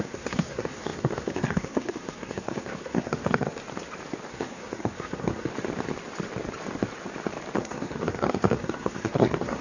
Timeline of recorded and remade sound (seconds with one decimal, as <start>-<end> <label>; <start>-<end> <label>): 0.0-3.6 remade; 3.6-4.3 recorded; 4.3-5.5 remade; 5.5-7.6 recorded; 7.6-9.6 remade